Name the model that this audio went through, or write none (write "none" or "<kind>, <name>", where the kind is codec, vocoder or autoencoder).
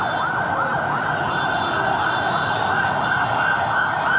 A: none